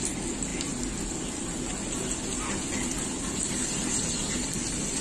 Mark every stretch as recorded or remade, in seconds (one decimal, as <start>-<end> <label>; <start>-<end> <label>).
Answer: 0.0-5.0 recorded